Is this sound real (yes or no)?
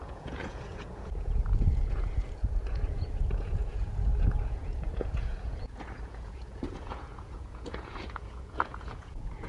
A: no